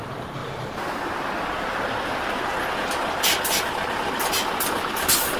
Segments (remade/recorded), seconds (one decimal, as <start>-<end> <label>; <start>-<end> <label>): 0.0-0.4 recorded; 0.4-1.7 remade; 1.7-5.4 recorded